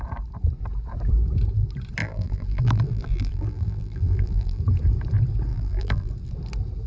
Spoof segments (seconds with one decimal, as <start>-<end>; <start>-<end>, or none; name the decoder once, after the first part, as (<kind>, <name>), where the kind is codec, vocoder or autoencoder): 2.0-4.6 (vocoder, BigVGAN v2); 5.5-6.1